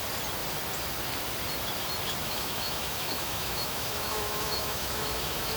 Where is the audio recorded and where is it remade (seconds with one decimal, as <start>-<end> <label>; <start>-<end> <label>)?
0.0-2.2 recorded; 2.2-5.6 remade